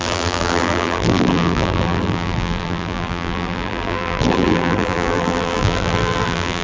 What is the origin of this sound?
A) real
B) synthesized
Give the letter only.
B